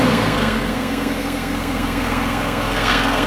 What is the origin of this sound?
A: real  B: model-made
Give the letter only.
B